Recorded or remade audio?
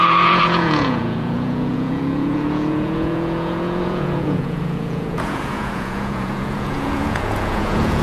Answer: remade